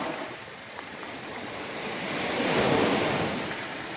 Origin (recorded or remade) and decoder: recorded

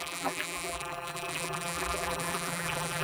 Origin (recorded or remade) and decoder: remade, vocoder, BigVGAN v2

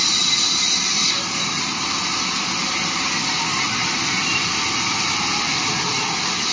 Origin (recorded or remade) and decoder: recorded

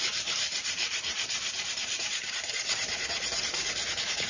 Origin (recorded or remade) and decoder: remade, vocoder, BigVGAN v2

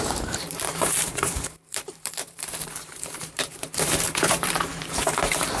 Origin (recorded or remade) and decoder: remade, vocoder, BigVGAN v2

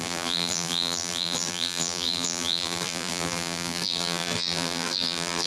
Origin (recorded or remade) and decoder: remade, vocoder, BigVGAN v2